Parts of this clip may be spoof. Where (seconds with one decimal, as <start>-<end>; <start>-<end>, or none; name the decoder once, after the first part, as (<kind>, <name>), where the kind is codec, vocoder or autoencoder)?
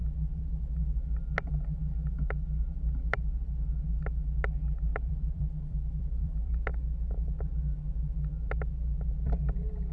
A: 0.0-0.5 (vocoder, BigVGAN v2); 4.9-6.6